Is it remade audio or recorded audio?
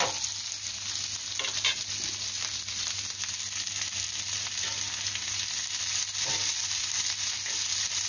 recorded